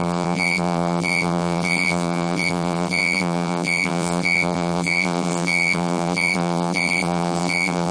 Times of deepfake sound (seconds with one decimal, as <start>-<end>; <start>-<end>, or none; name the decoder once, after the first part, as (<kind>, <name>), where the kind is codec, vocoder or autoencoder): 0.0-7.9 (vocoder, BigVGAN v2)